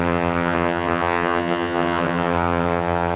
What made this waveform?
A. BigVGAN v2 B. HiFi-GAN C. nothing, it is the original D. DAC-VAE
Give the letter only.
B